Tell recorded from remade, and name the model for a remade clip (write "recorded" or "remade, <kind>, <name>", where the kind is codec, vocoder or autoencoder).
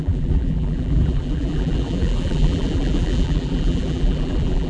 remade, vocoder, BigVGAN v2